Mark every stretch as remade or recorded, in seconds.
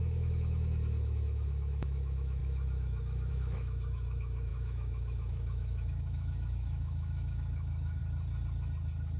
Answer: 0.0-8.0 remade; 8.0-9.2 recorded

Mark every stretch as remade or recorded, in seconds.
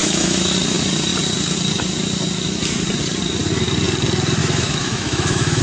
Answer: 0.0-0.5 remade; 0.5-4.4 recorded; 4.4-5.6 remade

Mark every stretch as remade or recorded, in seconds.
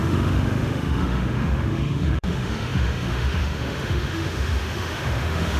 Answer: 0.0-5.6 remade